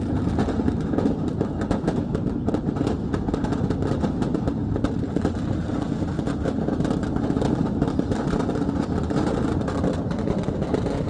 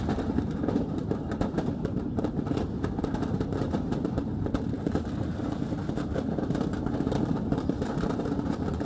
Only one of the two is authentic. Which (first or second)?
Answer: first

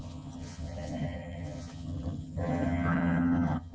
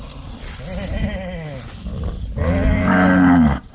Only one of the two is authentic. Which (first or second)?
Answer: second